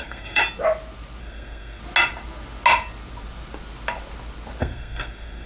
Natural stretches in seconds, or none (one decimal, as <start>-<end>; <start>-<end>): 0.4-1.2; 1.8-4.6